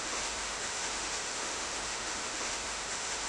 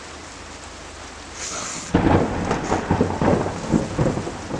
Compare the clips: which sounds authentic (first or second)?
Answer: second